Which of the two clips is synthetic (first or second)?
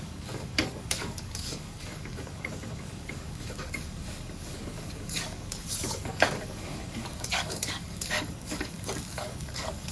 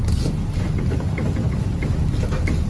first